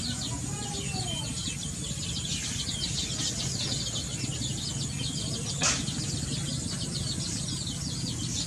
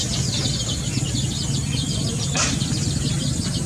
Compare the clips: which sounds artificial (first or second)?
second